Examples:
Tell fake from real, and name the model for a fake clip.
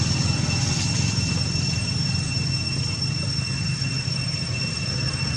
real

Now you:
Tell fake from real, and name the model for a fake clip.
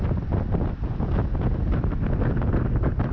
real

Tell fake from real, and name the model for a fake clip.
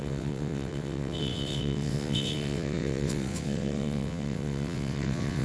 fake, vocoder, WaveNeXt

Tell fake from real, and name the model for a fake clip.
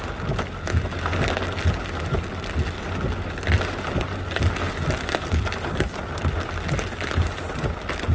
real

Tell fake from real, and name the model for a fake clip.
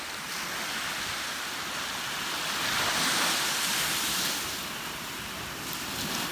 real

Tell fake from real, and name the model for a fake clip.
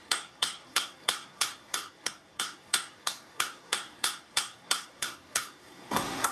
fake, codec, SNAC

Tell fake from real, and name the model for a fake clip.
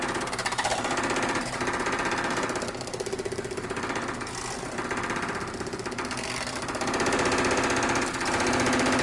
real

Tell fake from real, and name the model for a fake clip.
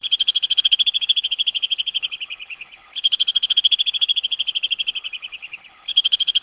fake, codec, HILCodec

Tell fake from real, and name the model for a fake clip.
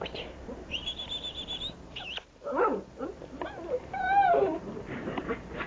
fake, vocoder, BigVGAN v2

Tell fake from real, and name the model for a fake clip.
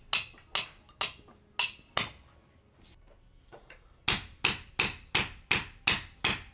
real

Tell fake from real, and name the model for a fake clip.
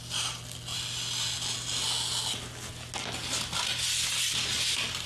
real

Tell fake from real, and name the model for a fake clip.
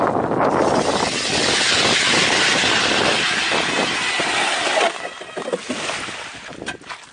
real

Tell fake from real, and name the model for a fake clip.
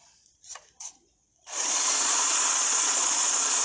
fake, vocoder, Vocos